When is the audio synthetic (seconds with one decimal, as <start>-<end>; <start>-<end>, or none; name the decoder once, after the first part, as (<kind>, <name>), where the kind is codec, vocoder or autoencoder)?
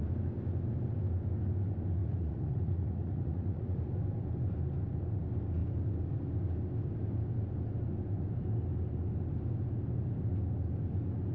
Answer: 2.0-3.8 (vocoder, Vocos)